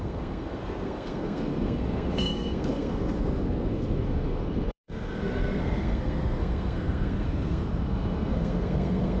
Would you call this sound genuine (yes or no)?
no